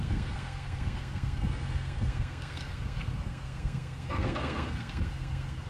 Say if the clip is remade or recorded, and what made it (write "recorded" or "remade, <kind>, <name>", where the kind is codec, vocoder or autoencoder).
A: remade, codec, SNAC